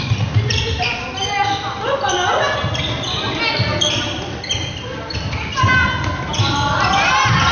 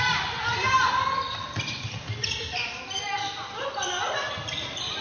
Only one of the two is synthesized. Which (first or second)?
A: second